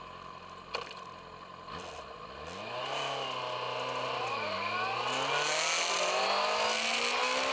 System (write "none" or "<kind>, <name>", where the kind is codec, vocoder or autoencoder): none